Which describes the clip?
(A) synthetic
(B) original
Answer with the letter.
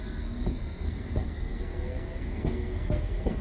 A